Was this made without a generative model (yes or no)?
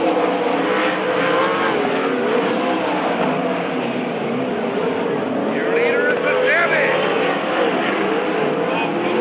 yes